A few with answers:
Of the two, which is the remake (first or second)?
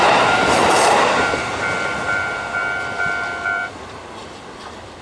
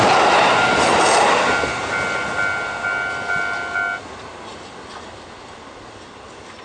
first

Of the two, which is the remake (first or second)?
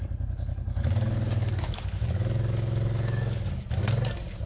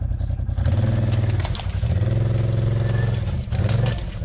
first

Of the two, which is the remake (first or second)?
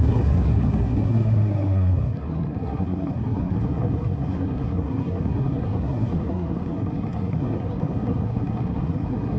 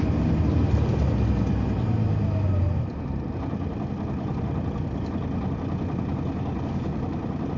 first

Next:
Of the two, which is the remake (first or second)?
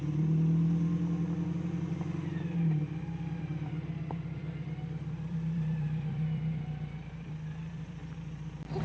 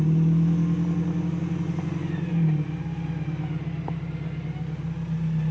first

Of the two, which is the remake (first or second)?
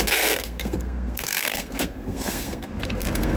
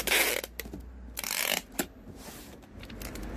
first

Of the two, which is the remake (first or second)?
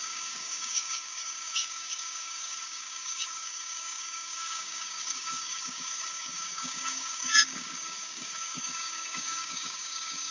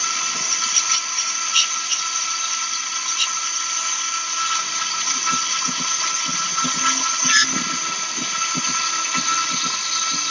first